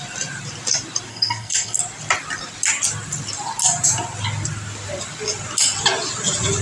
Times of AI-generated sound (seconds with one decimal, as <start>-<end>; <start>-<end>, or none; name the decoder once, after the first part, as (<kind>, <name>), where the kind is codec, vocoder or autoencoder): 1.1-1.8 (codec, SNAC)